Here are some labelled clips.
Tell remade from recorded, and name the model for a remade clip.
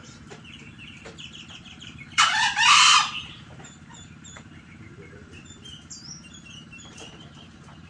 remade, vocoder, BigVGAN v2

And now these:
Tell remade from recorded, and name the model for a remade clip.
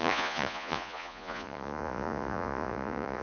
remade, vocoder, Vocos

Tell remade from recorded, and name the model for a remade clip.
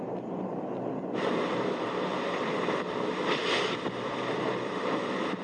remade, vocoder, BigVGAN v2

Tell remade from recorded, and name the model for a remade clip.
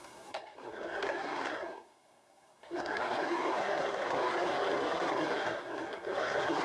remade, codec, SNAC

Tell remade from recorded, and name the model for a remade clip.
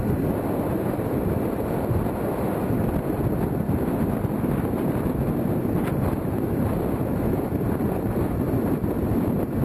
recorded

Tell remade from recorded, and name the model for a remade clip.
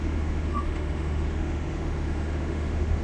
remade, autoencoder, DAC-VAE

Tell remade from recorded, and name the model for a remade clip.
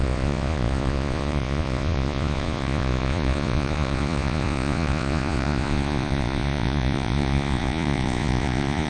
remade, vocoder, Vocos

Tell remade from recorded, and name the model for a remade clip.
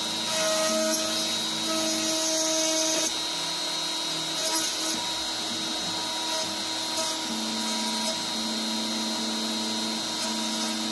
recorded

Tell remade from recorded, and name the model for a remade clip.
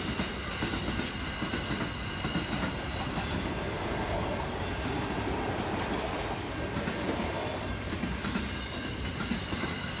recorded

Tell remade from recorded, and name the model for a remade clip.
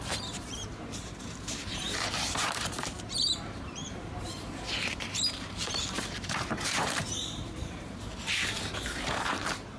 remade, vocoder, BigVGAN v2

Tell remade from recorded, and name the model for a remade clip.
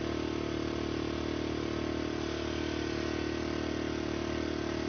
recorded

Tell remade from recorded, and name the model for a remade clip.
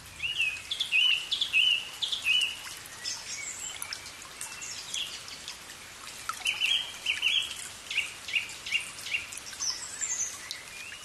recorded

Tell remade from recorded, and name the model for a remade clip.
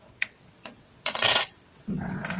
remade, vocoder, WaveNeXt